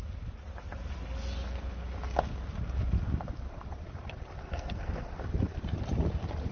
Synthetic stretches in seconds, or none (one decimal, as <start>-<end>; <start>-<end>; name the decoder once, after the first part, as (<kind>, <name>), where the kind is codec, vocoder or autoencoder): 4.4-5.2 (codec, SNAC)